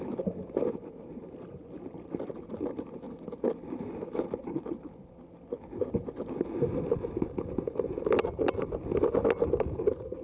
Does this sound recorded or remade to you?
recorded